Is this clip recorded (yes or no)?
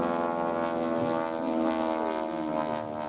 yes